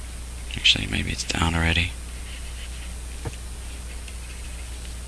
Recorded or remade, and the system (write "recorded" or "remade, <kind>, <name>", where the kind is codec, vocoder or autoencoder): recorded